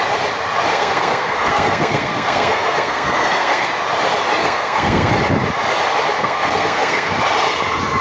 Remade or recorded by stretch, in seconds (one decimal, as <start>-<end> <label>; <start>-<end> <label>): 0.0-0.7 recorded; 0.7-3.7 remade; 3.7-4.4 recorded; 4.4-5.1 remade; 5.1-6.2 recorded; 6.2-7.1 remade; 7.1-8.0 recorded